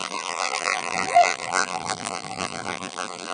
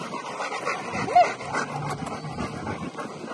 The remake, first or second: first